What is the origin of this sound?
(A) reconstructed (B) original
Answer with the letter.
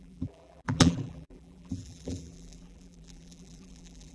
A